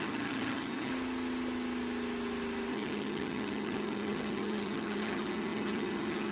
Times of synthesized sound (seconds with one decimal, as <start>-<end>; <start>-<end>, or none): 0.0-0.9; 2.7-6.3